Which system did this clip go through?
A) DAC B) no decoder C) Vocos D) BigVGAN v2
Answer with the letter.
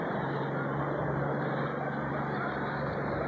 B